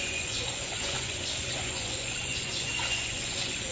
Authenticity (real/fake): fake